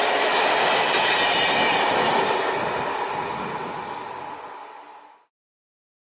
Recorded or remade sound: recorded